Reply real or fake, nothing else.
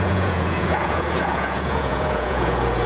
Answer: fake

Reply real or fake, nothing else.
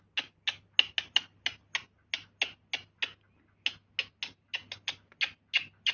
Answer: real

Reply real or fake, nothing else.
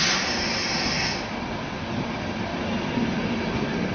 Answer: real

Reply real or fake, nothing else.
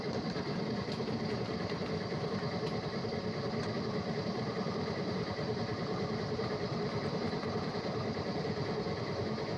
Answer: real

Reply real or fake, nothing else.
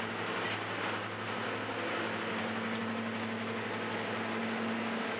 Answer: real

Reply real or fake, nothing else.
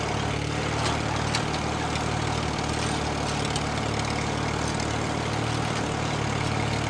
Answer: real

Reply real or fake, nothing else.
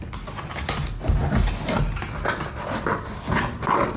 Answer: real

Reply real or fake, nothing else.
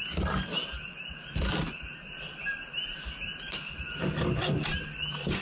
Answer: real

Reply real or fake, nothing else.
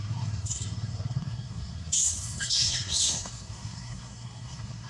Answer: fake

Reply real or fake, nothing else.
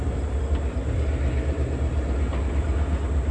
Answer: real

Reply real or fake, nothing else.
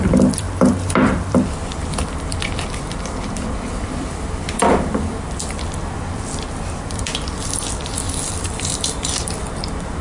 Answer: fake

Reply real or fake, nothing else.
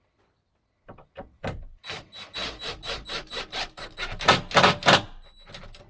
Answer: real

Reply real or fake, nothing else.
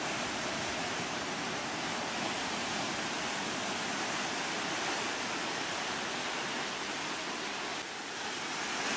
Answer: real